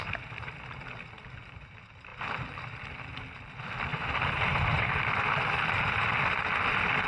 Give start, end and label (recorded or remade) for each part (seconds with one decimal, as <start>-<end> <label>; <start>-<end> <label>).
0.0-3.9 recorded; 3.9-5.0 remade; 5.0-7.1 recorded